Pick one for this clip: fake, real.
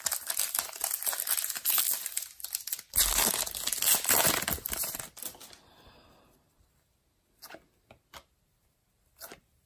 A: real